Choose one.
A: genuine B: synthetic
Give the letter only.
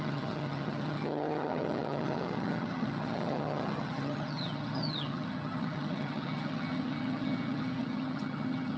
B